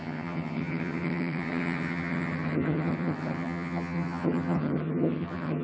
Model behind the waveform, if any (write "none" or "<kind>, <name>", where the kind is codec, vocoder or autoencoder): vocoder, HiFi-GAN